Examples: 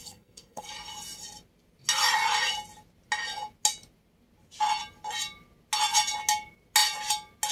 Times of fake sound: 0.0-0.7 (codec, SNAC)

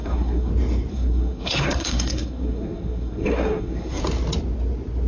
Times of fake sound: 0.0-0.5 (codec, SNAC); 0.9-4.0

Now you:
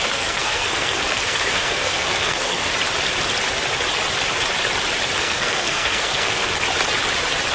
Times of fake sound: 0.0-2.7 (codec, SNAC); 5.2-6.5

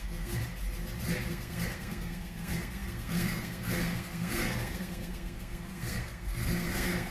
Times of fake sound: 0.0-0.4 (codec, SNAC); 1.3-7.1

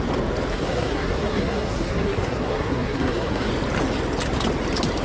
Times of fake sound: 0.5-3.5 (codec, SNAC)

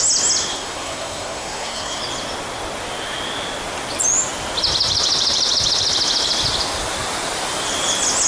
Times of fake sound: 0.5-2.0 (codec, SNAC)